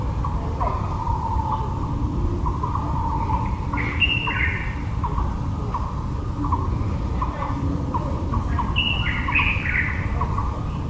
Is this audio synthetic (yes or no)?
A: no